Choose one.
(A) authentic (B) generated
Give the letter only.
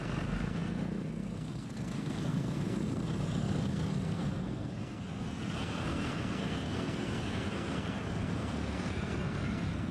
B